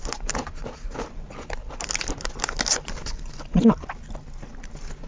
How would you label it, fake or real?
real